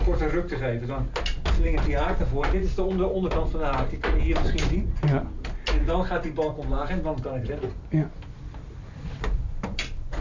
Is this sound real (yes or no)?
yes